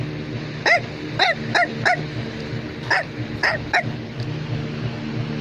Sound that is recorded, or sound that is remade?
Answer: recorded